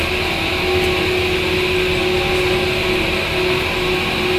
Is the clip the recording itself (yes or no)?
yes